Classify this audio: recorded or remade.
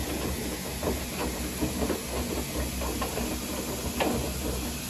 recorded